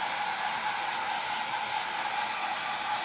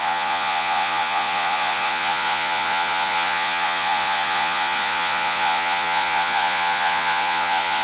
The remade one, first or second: second